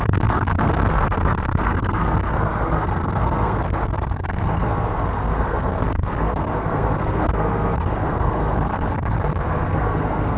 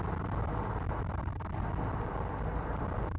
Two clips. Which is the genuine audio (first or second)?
second